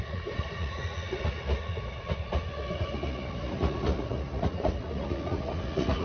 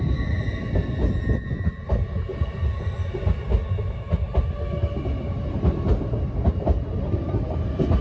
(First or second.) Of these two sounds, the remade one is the first